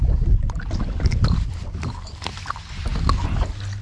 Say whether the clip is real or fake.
real